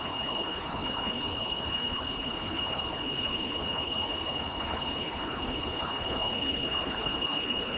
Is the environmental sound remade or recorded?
remade